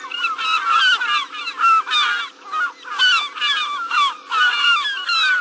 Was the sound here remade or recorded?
recorded